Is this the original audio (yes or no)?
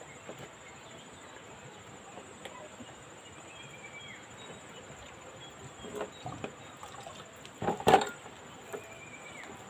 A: yes